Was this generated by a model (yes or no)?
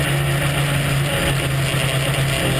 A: no